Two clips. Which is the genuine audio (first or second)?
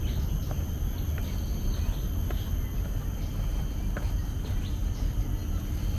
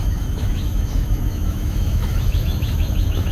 first